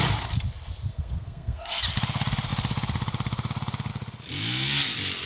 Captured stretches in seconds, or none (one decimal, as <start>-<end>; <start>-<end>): 0.0-0.9; 1.8-5.3